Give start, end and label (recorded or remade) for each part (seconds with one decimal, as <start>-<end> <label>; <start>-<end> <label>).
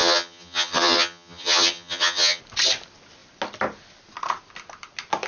0.0-2.4 remade; 2.4-5.3 recorded